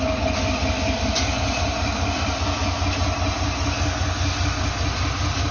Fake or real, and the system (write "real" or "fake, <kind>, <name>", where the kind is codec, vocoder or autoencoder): real